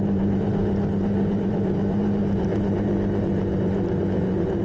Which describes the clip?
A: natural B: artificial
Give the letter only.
B